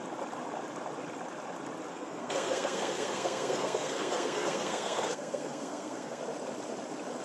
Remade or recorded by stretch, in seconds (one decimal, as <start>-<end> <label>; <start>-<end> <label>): 0.0-1.9 recorded; 1.9-6.2 remade; 6.2-7.2 recorded

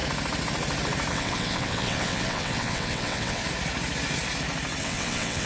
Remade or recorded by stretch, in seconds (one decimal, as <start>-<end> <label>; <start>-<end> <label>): 0.0-1.1 recorded; 1.1-3.4 remade; 3.4-4.8 recorded; 4.8-5.5 remade

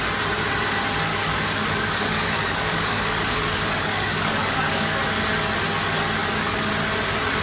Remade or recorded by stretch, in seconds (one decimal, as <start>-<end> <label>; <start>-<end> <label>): 0.0-1.1 recorded; 1.1-5.0 remade; 5.0-6.2 recorded; 6.2-6.7 remade; 6.7-7.4 recorded

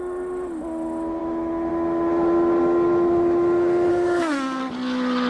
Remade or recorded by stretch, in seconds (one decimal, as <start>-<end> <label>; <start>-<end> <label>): 0.0-3.9 recorded; 3.9-4.6 remade; 4.6-5.3 recorded